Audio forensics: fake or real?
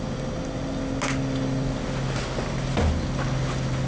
real